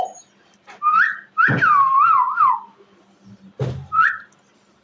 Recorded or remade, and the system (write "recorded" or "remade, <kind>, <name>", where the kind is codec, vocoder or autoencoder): remade, vocoder, BigVGAN v2